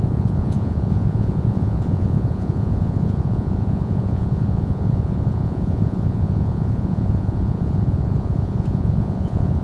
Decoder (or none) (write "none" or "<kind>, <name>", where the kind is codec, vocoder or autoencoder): vocoder, Vocos